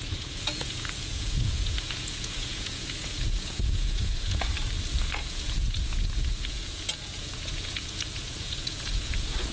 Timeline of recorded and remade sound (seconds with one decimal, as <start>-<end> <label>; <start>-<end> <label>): 0.0-4.5 remade; 4.5-5.0 recorded; 5.0-9.5 remade